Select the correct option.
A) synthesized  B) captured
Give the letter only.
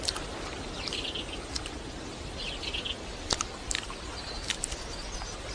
B